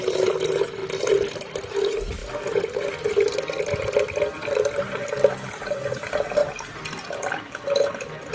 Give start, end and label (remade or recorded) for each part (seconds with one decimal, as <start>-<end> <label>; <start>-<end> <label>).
0.0-0.8 recorded; 0.8-1.7 remade; 1.7-8.3 recorded

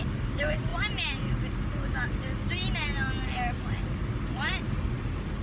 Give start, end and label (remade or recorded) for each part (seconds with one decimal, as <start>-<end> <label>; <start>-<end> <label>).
0.0-5.4 recorded